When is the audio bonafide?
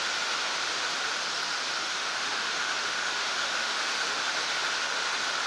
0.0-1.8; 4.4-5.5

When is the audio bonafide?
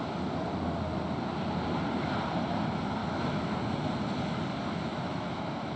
0.0-3.0; 3.6-4.9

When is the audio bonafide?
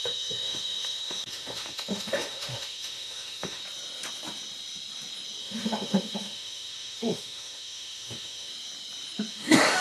3.6-5.4; 8.5-9.3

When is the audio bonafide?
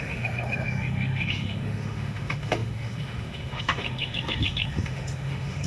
none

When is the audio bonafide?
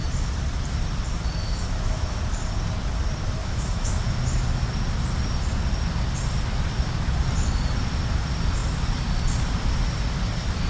0.0-1.4; 2.2-3.4; 3.9-10.7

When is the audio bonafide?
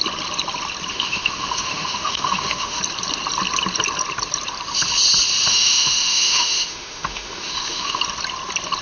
0.0-0.9; 2.8-5.5; 8.0-8.8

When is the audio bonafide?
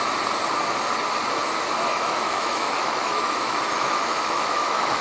0.0-1.9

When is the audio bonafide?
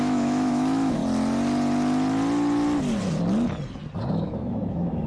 1.0-4.1